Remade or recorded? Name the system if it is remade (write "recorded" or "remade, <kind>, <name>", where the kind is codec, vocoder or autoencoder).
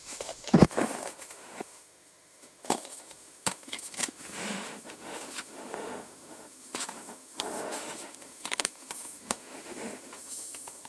remade, autoencoder, DAC-VAE